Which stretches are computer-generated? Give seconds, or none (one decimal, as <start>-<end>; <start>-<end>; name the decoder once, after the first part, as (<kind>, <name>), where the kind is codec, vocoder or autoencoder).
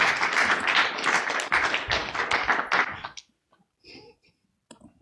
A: none